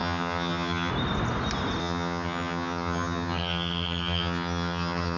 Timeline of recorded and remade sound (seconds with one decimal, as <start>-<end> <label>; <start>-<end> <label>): 0.0-0.9 remade; 0.9-1.8 recorded; 1.8-5.2 remade